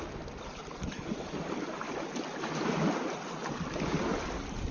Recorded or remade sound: recorded